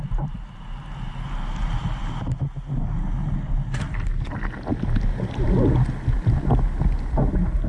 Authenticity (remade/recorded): recorded